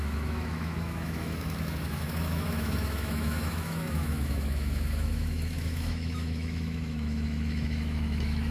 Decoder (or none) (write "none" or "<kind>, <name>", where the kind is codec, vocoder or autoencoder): autoencoder, DAC-VAE